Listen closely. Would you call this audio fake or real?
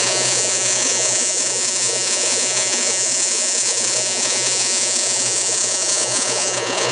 fake